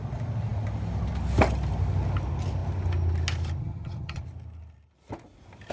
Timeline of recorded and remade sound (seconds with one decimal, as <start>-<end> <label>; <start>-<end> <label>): 0.0-3.6 recorded; 3.6-4.2 remade; 4.2-5.7 recorded